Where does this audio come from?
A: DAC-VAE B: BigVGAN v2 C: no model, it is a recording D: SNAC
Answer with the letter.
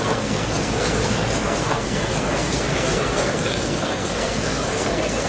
D